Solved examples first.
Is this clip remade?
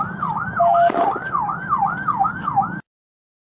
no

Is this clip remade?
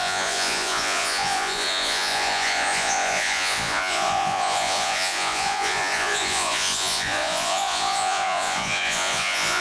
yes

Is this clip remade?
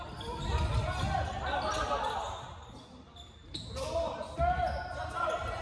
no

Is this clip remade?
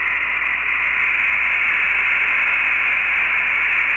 no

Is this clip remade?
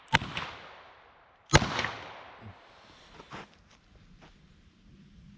no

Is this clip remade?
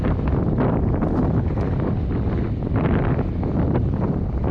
no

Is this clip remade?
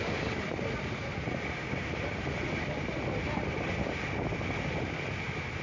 no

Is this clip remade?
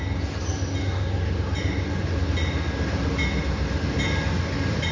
no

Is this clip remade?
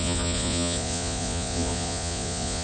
yes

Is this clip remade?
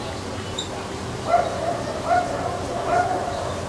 no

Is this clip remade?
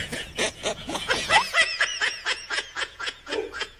yes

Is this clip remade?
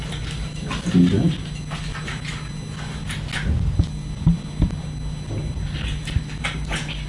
no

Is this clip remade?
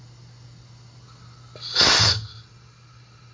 no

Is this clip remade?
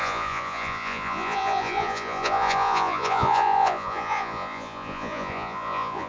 yes